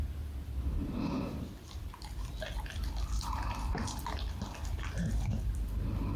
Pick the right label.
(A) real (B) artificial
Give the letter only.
A